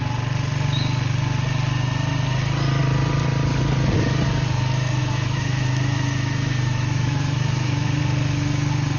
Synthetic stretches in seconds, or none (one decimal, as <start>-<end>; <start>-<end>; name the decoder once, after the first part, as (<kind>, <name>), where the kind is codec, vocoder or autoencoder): 5.0-8.0 (autoencoder, DAC-VAE)